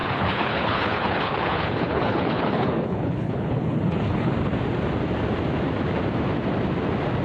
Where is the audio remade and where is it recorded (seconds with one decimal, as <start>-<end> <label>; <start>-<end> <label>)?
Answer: 0.0-4.3 remade; 4.3-7.2 recorded